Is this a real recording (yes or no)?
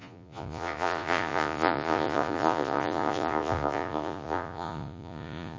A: no